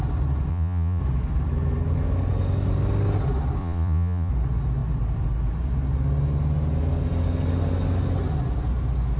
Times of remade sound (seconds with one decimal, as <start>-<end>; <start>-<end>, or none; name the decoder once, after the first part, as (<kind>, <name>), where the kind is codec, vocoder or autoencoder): 0.5-1.0 (vocoder, Vocos); 3.6-4.3